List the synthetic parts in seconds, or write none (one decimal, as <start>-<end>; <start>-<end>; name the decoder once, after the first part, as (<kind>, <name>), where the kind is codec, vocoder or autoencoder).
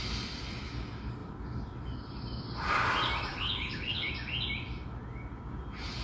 3.3-4.1 (codec, HILCodec)